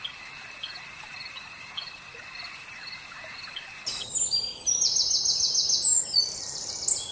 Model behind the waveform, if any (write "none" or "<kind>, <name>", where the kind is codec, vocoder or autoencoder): none